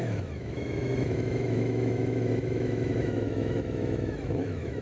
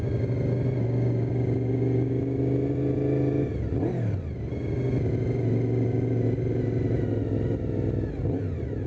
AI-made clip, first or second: first